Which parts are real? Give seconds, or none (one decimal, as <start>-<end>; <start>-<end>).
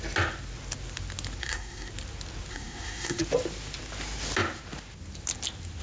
0.0-1.4; 1.9-2.5; 3.2-5.8